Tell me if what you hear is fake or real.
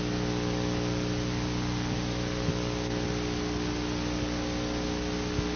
real